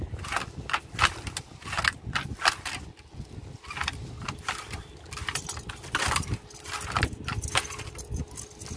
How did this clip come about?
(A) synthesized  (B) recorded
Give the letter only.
B